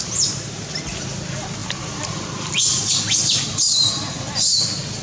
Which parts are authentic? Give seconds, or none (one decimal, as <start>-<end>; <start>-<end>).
0.0-5.0